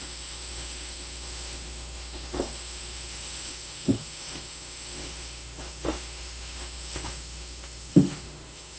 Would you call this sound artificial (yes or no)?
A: yes